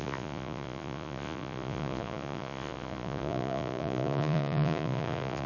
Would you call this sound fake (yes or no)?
yes